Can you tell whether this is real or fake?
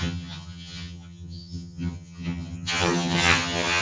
fake